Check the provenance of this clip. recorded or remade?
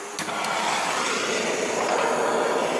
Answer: recorded